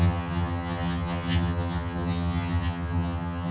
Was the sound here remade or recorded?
remade